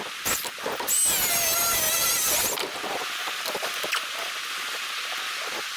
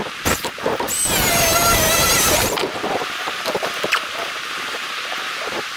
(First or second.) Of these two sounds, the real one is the first